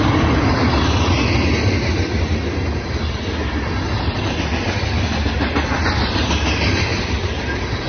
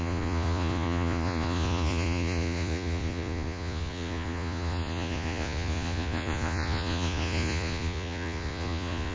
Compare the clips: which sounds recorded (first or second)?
first